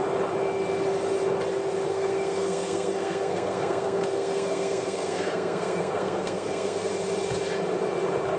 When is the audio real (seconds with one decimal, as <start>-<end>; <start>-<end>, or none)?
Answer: 0.0-1.9; 6.9-8.4